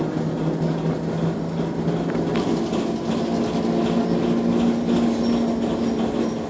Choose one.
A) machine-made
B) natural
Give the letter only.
B